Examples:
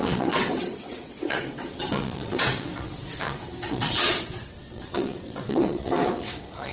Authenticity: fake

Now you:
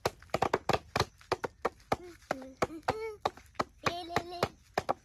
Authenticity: real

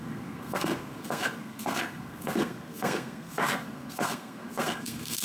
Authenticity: fake